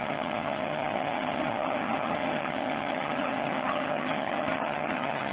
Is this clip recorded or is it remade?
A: remade